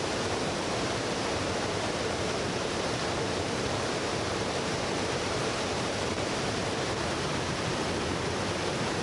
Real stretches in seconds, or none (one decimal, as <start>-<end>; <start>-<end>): 7.7-8.5